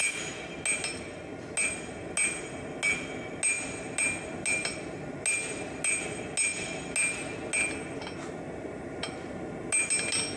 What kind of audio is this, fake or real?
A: real